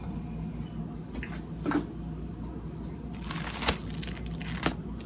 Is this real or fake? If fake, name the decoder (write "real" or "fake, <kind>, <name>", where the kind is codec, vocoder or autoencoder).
real